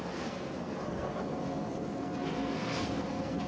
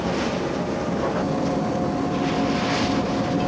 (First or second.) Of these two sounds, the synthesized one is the first